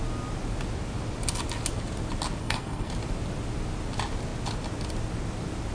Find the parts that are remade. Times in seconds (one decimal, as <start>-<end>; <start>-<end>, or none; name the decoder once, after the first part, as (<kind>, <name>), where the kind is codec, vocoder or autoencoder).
2.4-2.9 (codec, SNAC)